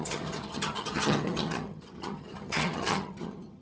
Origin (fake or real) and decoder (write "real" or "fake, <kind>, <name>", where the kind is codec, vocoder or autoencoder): fake, vocoder, HiFi-GAN